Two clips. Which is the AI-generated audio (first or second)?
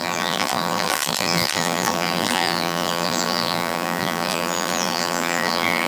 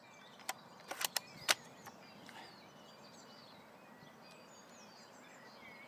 first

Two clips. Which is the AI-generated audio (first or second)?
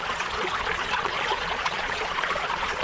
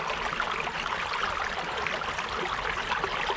first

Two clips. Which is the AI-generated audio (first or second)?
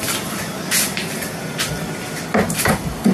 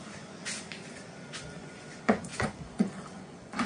second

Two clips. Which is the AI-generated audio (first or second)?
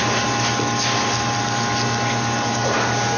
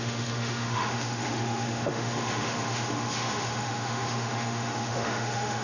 second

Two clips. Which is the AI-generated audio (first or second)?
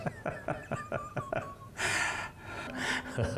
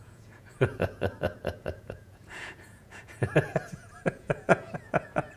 second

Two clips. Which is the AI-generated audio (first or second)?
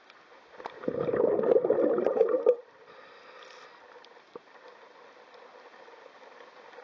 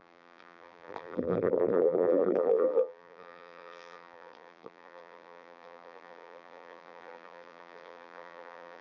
second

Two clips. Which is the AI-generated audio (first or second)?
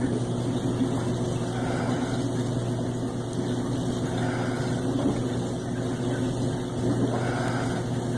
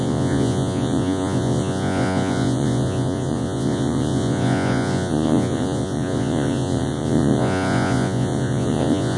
second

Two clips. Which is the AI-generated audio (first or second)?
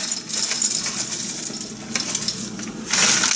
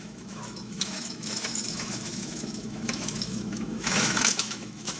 second